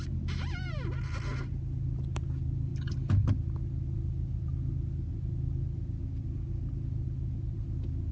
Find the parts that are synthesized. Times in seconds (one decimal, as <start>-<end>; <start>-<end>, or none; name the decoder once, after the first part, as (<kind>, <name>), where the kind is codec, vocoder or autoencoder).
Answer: none